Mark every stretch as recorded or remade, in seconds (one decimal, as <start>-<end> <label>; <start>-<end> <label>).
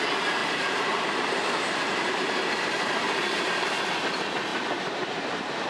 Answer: 0.0-0.4 recorded; 0.4-3.8 remade; 3.8-4.5 recorded; 4.5-5.7 remade